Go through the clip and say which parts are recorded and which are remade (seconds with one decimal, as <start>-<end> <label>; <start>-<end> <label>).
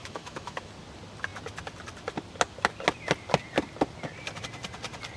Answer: 0.0-0.7 remade; 0.7-5.2 recorded